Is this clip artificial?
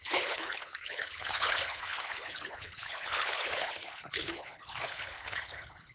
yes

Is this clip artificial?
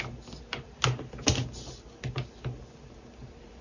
no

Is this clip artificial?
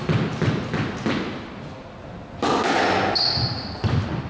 no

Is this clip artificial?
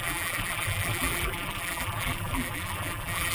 yes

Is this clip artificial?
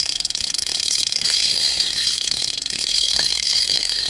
yes